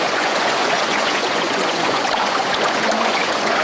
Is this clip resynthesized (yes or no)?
yes